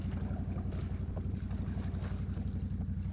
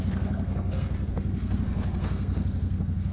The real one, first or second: first